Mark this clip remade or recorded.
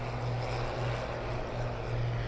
recorded